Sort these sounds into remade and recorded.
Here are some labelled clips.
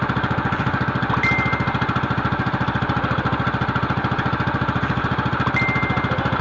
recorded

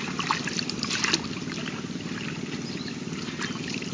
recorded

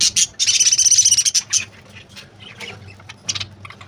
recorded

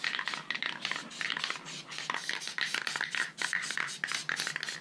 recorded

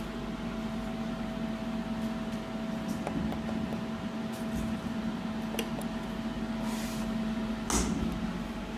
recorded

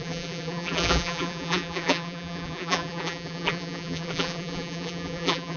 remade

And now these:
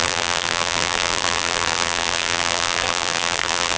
remade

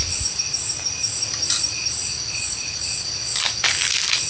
recorded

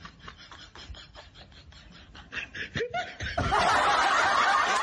recorded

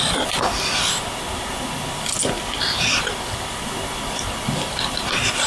remade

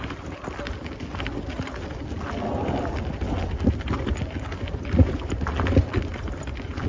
recorded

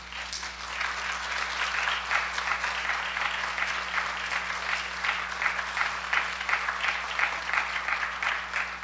recorded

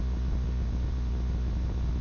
recorded